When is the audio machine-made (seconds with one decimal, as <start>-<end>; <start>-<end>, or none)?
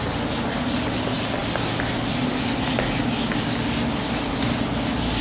none